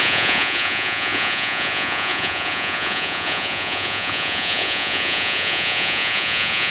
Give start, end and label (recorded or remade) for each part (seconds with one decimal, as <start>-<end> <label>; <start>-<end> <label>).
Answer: 0.0-6.7 remade